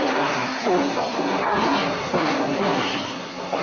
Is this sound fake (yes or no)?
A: yes